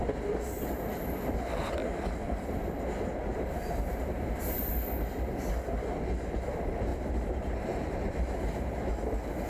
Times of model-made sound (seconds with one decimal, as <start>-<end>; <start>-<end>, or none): 3.3-4.7; 6.9-8.9